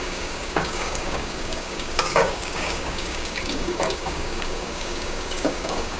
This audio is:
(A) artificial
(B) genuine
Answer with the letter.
A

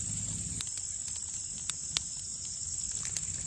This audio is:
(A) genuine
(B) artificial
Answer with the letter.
A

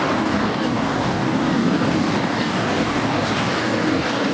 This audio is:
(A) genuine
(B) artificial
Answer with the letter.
B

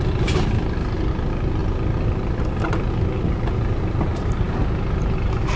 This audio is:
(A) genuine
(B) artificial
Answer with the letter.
A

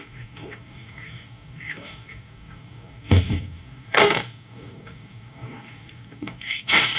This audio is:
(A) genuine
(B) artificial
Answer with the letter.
B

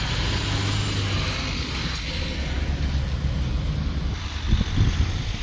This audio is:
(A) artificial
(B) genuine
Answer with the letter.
B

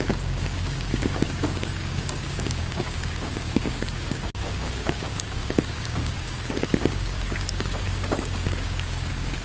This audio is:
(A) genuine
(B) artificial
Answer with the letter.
B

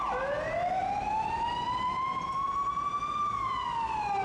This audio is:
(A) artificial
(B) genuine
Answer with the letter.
B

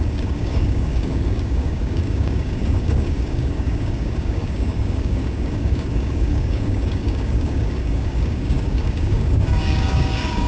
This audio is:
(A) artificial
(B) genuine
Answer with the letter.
A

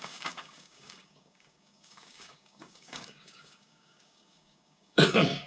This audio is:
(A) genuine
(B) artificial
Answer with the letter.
B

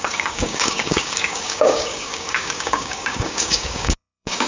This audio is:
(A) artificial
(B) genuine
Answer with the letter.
A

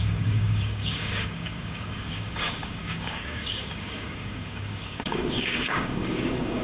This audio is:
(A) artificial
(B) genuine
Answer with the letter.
A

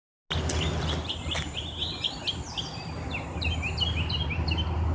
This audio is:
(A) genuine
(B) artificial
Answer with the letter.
A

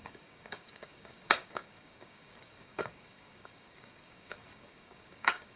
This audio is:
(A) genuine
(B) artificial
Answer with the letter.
B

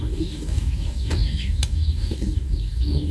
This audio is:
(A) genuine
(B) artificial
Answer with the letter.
B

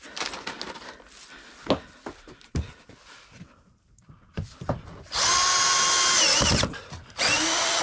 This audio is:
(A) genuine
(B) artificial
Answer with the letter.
A